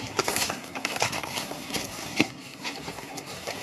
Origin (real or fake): fake